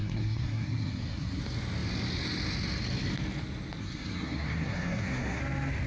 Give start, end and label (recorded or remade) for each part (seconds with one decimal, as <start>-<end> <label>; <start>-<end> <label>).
0.0-1.4 remade; 1.4-3.8 recorded; 3.8-5.4 remade; 5.4-5.9 recorded